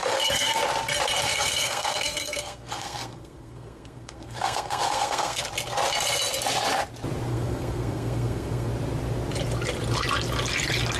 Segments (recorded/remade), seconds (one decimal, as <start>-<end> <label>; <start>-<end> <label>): 0.0-0.6 remade; 0.6-1.3 recorded; 1.3-5.5 remade; 5.5-7.3 recorded; 7.3-8.7 remade; 8.7-11.0 recorded